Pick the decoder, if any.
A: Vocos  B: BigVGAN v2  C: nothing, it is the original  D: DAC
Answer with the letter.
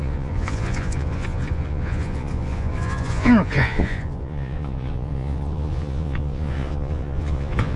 A